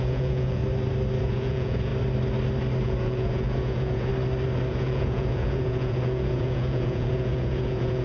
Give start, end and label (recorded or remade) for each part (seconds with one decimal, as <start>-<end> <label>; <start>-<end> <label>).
0.0-0.6 remade; 0.6-1.2 recorded; 1.2-1.9 remade; 1.9-2.8 recorded; 2.8-4.1 remade; 4.1-4.7 recorded; 4.7-8.0 remade